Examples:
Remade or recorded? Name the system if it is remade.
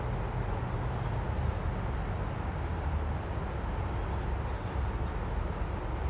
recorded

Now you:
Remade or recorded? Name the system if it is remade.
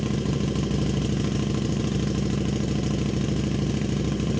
recorded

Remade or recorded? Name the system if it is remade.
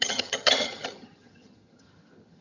remade, vocoder, HiFi-GAN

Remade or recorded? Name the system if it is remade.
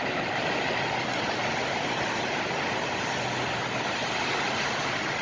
recorded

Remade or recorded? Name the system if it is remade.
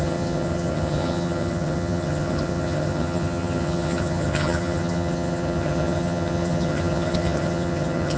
remade, vocoder, HiFi-GAN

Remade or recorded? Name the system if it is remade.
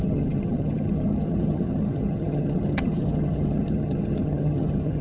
remade, vocoder, HiFi-GAN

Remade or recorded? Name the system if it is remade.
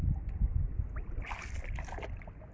recorded